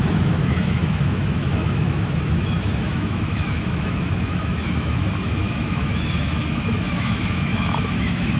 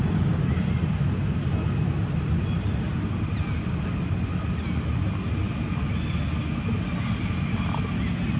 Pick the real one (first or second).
second